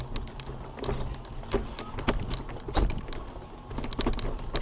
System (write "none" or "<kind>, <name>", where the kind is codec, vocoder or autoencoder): none